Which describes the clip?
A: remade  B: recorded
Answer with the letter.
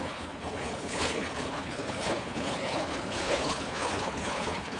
A